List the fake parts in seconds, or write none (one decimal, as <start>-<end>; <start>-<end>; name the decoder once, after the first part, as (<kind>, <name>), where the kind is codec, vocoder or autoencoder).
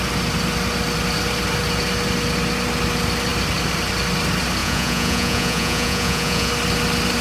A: 4.6-6.5 (vocoder, Vocos)